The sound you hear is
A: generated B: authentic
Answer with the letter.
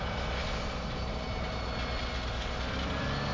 B